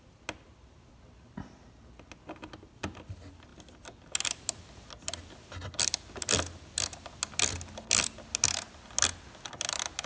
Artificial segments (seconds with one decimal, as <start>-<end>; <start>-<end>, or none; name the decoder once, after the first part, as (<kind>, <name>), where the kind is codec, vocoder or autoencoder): none